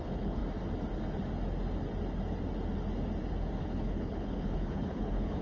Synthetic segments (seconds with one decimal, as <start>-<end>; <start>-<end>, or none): 0.0-0.4; 3.6-5.4